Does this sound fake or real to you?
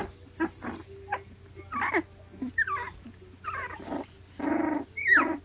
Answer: real